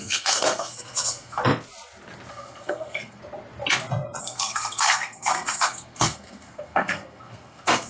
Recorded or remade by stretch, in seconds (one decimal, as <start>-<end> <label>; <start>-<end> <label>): 0.0-1.4 remade; 1.4-2.3 recorded; 2.3-3.2 remade; 3.2-4.2 recorded; 4.2-7.9 remade